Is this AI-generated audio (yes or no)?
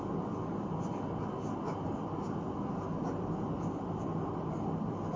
no